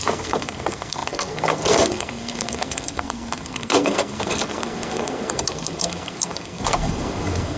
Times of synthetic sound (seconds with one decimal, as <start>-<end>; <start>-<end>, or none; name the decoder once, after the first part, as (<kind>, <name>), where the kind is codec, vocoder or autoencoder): 0.0-7.6 (codec, SNAC)